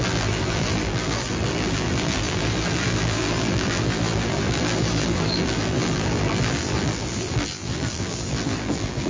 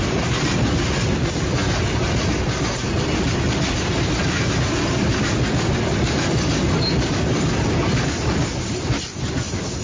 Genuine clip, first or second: second